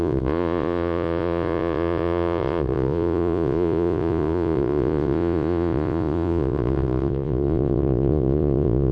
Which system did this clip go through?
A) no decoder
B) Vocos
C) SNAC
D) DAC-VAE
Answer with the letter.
B